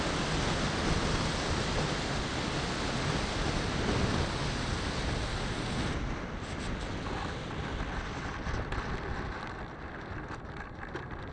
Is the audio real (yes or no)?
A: yes